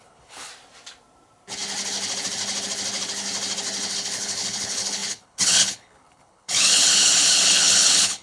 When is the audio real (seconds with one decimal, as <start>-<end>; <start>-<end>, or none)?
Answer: 0.5-3.9